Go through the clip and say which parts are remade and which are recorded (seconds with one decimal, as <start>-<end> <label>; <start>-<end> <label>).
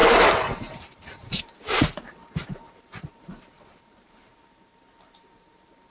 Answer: 0.0-5.9 remade